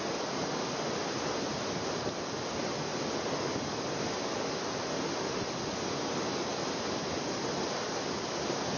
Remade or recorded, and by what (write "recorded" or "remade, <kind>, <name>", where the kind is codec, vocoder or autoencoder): recorded